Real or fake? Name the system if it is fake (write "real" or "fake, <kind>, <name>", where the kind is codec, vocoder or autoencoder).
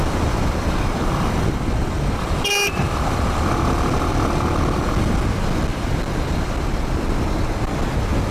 real